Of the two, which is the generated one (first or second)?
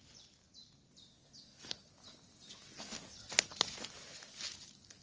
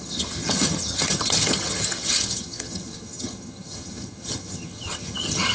second